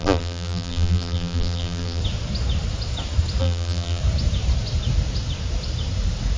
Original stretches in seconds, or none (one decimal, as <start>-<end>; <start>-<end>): 2.0-3.4; 4.0-6.4